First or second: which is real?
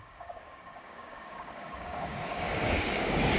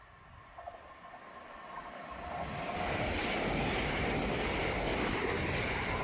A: second